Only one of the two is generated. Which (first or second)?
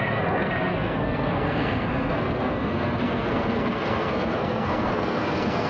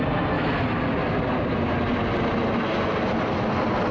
first